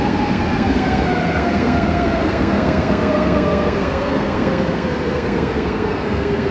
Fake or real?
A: fake